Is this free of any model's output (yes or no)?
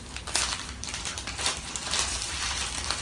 no